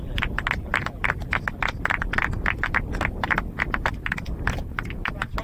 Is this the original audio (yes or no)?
yes